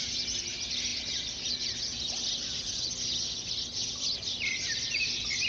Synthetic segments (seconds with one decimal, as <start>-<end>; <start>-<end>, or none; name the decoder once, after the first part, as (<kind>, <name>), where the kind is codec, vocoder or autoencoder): none